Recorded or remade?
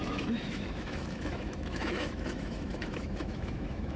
remade